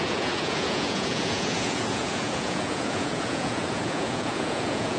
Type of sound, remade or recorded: remade